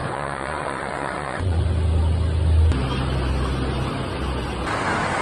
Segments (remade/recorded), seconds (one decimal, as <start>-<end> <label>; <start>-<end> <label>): 0.0-1.6 remade; 1.6-5.2 recorded